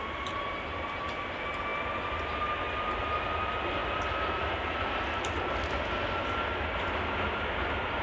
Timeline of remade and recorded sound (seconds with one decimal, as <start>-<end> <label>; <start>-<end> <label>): 0.0-8.0 recorded

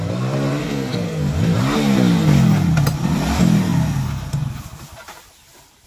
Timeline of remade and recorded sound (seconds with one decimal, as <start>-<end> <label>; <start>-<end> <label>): 0.0-0.6 recorded; 0.6-1.3 remade; 1.3-5.9 recorded